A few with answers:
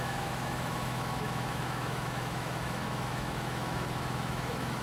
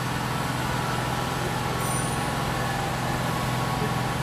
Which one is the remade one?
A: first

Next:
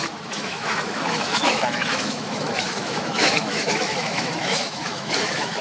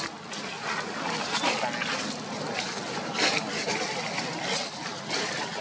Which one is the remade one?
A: first